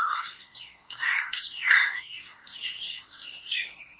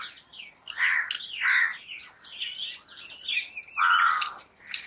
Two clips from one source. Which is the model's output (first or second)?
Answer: first